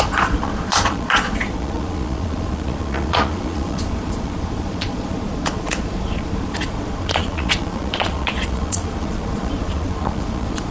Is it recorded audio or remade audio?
remade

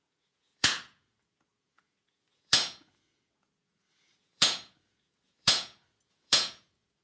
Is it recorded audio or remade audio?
remade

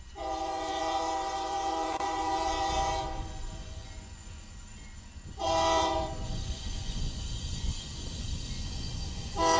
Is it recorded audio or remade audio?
remade